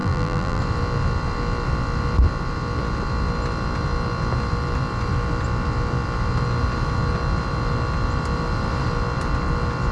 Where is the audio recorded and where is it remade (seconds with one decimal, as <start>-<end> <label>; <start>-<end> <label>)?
0.0-0.6 remade; 0.6-9.9 recorded